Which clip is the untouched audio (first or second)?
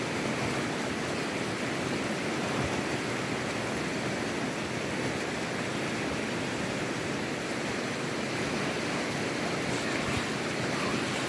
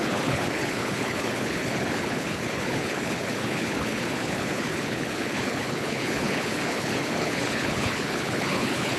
first